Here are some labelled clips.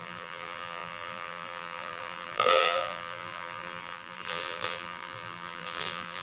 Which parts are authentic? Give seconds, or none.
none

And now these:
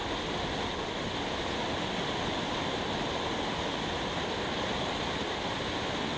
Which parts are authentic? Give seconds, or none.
0.0-6.2

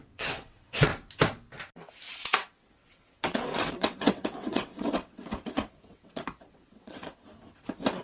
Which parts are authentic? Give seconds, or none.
0.9-2.1; 7.3-8.0

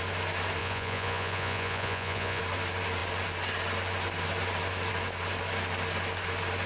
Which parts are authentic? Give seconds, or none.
0.0-0.6; 2.4-6.7

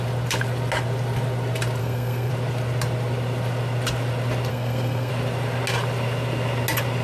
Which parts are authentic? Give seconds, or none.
0.0-1.8; 2.3-4.5; 5.1-7.0